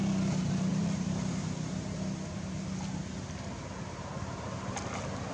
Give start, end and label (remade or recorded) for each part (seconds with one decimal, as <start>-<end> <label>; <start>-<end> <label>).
0.0-0.7 recorded; 0.7-1.3 remade; 1.3-5.3 recorded